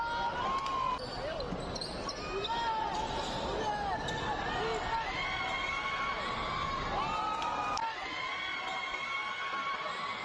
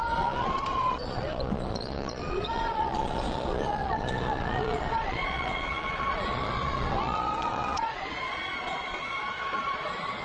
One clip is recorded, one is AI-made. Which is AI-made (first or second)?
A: second